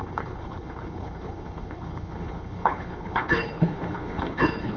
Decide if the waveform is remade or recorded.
remade